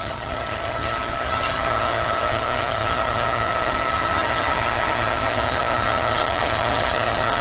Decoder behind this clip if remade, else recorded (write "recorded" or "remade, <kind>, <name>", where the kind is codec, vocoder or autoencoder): remade, vocoder, HiFi-GAN